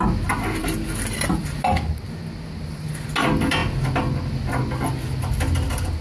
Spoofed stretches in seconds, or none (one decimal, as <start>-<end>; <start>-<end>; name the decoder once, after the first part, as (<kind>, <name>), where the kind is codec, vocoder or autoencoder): none